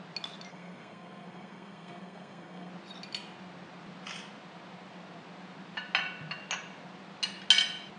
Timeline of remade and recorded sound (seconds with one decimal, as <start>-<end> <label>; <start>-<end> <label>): 0.0-0.5 recorded; 0.5-2.7 remade; 2.7-8.0 recorded

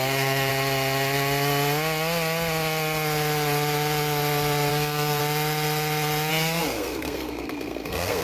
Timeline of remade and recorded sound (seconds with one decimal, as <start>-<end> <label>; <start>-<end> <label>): 0.0-0.5 remade; 0.5-4.7 recorded; 4.7-5.2 remade; 5.2-6.3 recorded; 6.3-8.2 remade

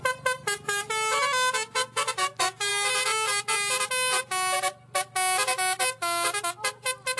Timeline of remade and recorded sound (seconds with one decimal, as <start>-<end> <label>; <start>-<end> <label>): 0.0-7.2 recorded

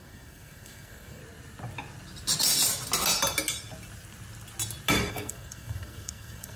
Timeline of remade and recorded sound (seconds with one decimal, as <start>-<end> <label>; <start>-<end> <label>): 0.0-1.2 remade; 1.2-5.1 recorded; 5.1-6.6 remade